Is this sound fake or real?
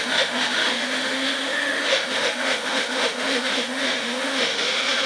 fake